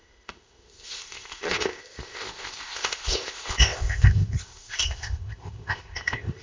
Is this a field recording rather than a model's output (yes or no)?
no